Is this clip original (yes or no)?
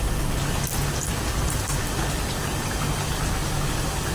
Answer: yes